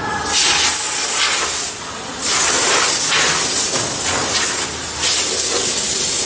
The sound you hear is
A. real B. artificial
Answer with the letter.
A